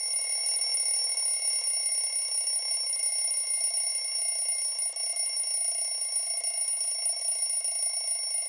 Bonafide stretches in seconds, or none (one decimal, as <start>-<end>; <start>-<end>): 0.0-8.5